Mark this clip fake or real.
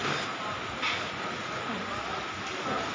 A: real